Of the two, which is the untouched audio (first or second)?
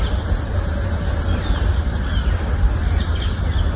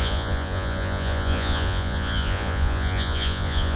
first